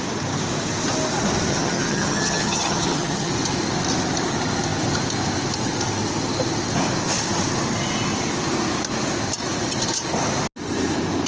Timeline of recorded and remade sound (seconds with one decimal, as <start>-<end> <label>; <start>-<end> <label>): 0.0-1.5 recorded; 1.5-3.3 remade; 3.3-11.3 recorded

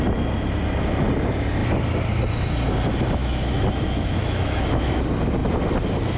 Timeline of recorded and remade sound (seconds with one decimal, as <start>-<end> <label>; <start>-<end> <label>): 0.0-3.2 recorded; 3.2-5.0 remade; 5.0-6.2 recorded

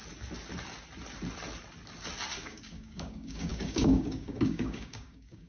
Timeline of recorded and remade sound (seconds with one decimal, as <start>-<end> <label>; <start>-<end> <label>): 0.0-2.4 recorded; 2.4-5.5 remade

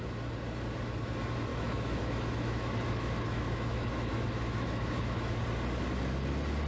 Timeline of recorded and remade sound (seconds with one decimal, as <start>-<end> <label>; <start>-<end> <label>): 0.0-1.5 recorded; 1.5-5.4 remade; 5.4-6.7 recorded

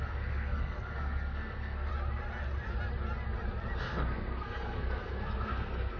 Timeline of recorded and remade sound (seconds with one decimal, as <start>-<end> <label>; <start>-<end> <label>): 0.0-1.9 remade; 1.9-3.8 recorded; 3.8-6.0 remade

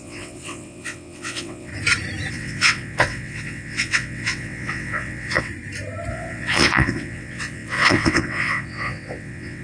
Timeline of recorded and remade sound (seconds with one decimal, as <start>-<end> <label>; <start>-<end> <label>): 0.0-1.7 remade; 1.7-2.3 recorded; 2.3-5.5 remade; 5.5-6.1 recorded; 6.1-9.6 remade